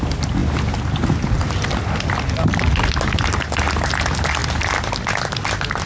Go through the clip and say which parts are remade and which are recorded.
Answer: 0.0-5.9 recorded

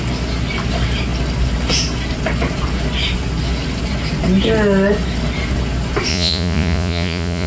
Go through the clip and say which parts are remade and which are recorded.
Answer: 0.0-6.1 recorded; 6.1-7.5 remade

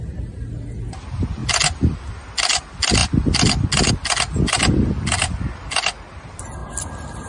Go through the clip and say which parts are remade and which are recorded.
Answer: 0.0-7.3 recorded

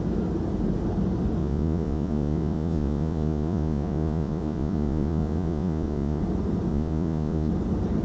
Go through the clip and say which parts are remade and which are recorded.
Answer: 0.0-1.4 recorded; 1.4-6.2 remade; 6.2-6.7 recorded; 6.7-7.5 remade; 7.5-8.0 recorded